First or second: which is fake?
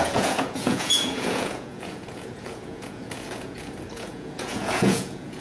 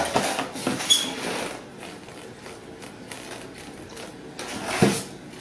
first